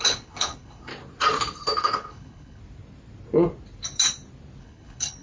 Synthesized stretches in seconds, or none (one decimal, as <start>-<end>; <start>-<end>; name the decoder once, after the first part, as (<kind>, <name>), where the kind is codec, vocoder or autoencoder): 0.0-0.9 (codec, HILCodec); 1.8-2.6; 4.6-5.2

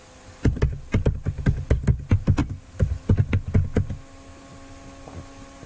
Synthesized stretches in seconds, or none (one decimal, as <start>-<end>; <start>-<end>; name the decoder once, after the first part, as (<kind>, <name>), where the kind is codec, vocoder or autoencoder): none

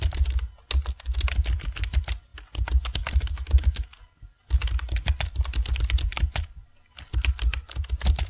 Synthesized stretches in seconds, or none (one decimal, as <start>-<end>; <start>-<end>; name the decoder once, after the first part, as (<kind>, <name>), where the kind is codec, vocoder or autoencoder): none